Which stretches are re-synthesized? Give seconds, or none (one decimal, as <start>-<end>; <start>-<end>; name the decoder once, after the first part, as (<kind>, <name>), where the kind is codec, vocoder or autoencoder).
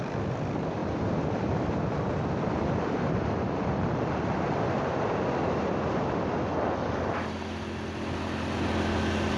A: 0.8-6.0 (vocoder, BigVGAN v2); 6.5-7.2